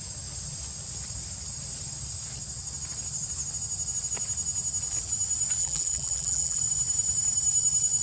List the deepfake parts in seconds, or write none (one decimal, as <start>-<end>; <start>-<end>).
5.6-6.6